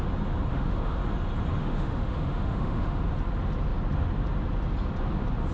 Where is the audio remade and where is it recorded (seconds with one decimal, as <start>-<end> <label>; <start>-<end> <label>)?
0.0-0.5 recorded; 0.5-1.0 remade; 1.0-1.6 recorded; 1.6-3.0 remade; 3.0-5.5 recorded